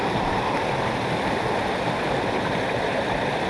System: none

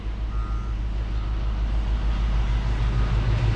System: none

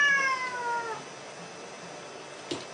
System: none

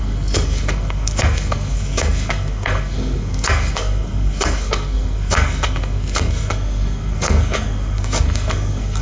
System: codec, SNAC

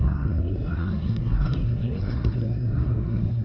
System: codec, SNAC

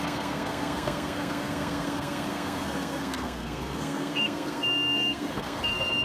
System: codec, SNAC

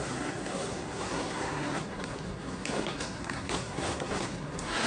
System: codec, SNAC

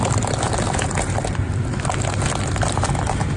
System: none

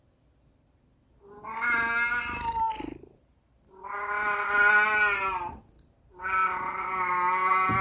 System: none